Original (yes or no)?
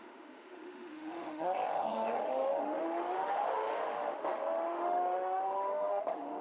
no